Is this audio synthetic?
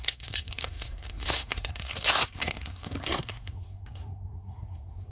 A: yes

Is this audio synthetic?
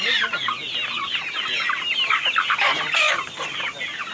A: no